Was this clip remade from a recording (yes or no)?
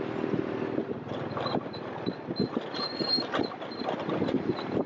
yes